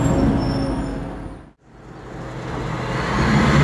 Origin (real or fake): real